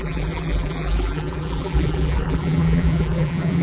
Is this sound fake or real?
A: fake